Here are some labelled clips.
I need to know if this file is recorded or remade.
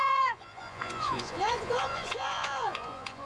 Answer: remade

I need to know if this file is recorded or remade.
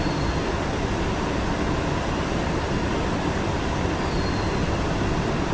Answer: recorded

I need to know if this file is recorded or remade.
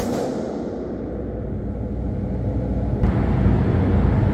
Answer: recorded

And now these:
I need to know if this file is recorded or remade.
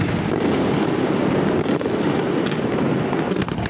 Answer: recorded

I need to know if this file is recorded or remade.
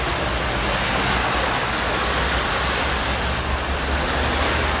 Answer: recorded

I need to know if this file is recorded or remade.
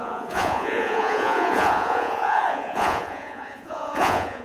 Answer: remade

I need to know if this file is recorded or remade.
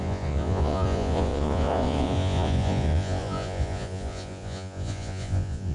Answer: remade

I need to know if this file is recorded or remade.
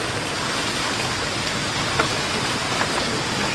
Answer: recorded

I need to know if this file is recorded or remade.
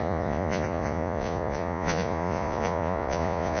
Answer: remade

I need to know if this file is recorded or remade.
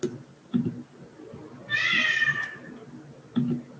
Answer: recorded